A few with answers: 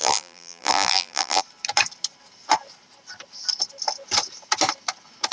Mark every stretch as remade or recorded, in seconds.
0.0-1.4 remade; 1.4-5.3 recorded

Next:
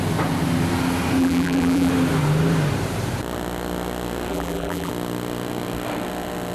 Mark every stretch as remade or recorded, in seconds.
0.0-1.2 recorded; 1.2-1.9 remade; 1.9-4.3 recorded; 4.3-4.9 remade; 4.9-6.5 recorded

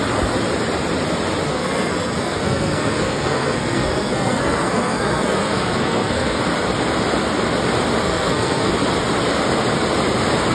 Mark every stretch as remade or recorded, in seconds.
0.0-1.5 recorded; 1.5-6.4 remade; 6.4-8.0 recorded; 8.0-8.7 remade; 8.7-10.5 recorded

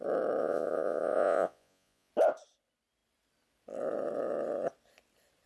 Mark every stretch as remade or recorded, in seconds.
0.0-0.4 recorded; 0.4-2.1 remade; 2.1-5.5 recorded

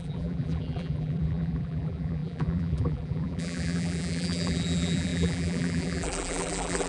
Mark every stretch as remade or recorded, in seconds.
0.0-6.9 remade